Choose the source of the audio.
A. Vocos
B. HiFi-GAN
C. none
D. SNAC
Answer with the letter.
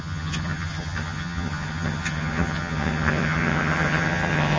B